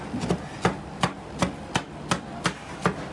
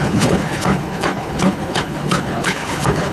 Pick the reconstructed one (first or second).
second